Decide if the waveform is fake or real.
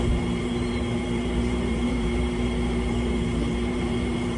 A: fake